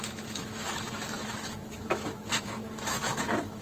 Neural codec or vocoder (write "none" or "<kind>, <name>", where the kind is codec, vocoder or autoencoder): autoencoder, DAC-VAE